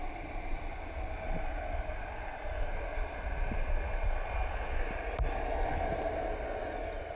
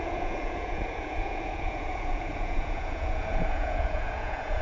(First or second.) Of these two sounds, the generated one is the second